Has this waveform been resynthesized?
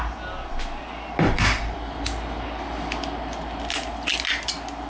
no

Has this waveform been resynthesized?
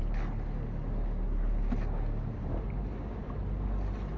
no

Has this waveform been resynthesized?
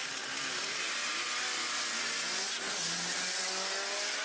no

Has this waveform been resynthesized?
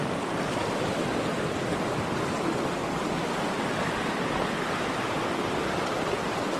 no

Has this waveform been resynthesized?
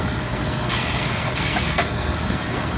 yes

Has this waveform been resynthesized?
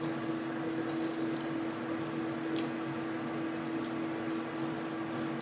no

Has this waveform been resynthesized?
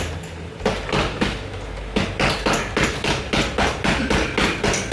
no